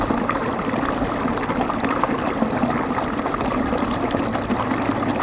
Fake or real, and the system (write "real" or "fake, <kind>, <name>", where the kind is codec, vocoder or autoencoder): real